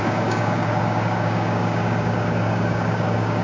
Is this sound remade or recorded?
remade